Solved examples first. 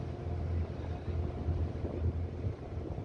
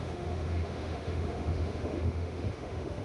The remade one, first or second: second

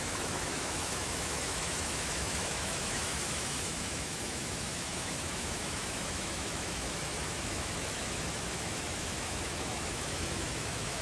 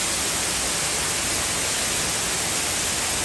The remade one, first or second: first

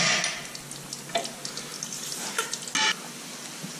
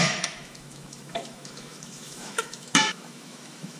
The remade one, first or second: second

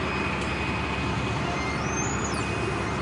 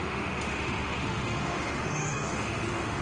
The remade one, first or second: second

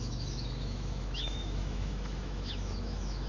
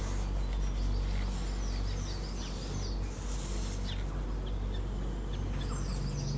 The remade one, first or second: first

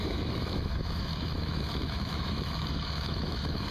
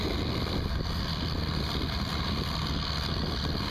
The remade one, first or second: first